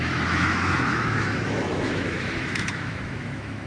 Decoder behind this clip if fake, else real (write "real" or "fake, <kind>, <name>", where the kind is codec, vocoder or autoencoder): fake, autoencoder, DAC-VAE